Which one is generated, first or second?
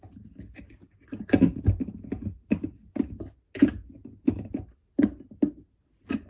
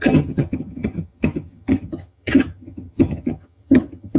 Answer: second